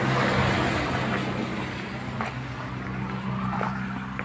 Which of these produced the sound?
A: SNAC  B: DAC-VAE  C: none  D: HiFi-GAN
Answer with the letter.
C